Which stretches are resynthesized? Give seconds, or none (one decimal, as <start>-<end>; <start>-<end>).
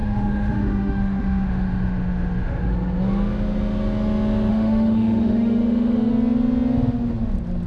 0.0-2.6; 4.5-6.1